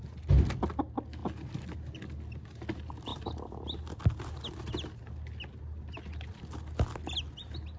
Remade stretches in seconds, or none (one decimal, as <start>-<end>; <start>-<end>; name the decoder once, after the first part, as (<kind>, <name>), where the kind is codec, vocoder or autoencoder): none